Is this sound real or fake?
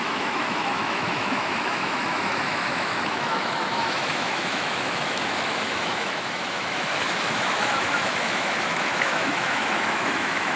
fake